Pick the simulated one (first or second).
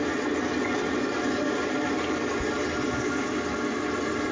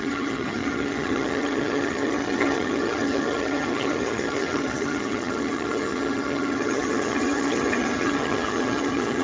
second